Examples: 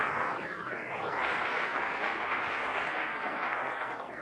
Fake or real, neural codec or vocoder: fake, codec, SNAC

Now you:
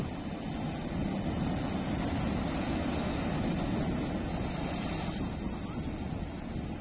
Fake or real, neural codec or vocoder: real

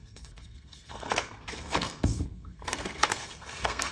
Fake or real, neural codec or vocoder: fake, codec, SNAC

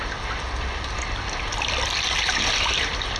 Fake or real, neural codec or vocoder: real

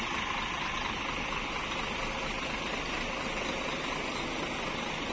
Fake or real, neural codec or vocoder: real